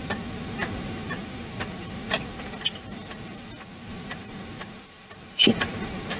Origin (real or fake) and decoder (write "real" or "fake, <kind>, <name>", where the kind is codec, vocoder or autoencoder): fake, vocoder, BigVGAN v2